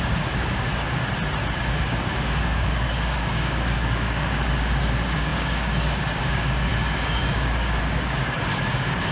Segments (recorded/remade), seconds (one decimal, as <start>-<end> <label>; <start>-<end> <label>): 0.0-1.0 remade; 1.0-1.6 recorded; 1.6-9.1 remade